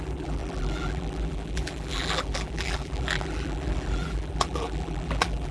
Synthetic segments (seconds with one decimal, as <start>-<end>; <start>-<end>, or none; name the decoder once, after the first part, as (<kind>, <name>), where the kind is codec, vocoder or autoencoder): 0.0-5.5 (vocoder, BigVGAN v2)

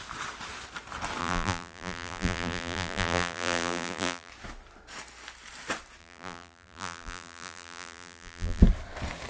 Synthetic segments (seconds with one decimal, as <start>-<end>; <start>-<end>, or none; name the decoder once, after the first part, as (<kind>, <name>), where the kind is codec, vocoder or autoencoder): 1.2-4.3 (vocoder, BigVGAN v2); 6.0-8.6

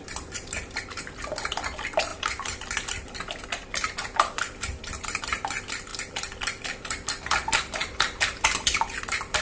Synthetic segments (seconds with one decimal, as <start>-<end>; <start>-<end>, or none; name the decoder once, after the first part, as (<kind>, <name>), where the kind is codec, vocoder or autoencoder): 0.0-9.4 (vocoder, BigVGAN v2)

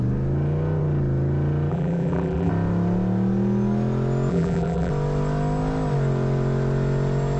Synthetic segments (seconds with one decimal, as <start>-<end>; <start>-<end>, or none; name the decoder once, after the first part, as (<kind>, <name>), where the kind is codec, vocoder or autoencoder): 1.7-2.5 (vocoder, BigVGAN v2); 4.3-4.9